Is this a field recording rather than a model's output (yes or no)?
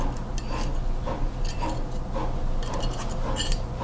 yes